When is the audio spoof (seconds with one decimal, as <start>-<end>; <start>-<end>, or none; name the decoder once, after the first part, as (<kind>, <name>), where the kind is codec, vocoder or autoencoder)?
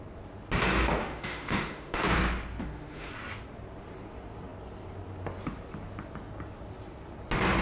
1.0-2.2 (autoencoder, DAC-VAE); 2.6-3.1